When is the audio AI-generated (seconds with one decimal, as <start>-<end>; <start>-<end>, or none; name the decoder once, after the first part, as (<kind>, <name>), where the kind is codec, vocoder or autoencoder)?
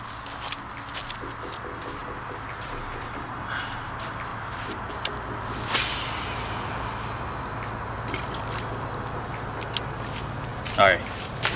2.0-3.4 (vocoder, BigVGAN v2); 4.3-4.9; 10.5-11.6